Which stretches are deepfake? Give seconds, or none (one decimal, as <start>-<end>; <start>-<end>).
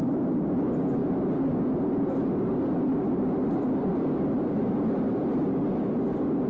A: none